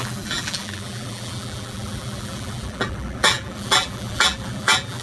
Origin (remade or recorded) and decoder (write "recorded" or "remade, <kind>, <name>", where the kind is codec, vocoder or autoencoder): remade, vocoder, BigVGAN v2